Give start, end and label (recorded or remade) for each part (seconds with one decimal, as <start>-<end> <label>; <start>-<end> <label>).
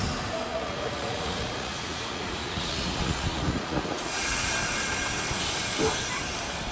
0.0-0.5 recorded; 0.5-4.5 remade; 4.5-6.7 recorded